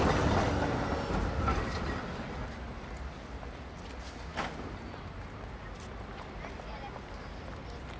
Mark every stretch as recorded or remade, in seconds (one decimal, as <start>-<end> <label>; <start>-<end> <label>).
0.0-8.0 recorded